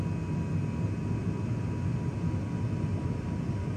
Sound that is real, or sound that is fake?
real